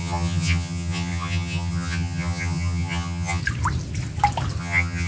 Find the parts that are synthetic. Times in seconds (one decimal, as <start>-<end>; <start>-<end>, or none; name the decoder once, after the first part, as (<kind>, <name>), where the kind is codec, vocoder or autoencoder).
0.0-3.4 (vocoder, HiFi-GAN); 4.6-5.1